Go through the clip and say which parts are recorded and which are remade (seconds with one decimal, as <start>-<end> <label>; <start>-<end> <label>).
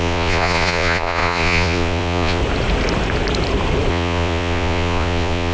0.0-2.4 remade; 2.4-3.9 recorded; 3.9-5.5 remade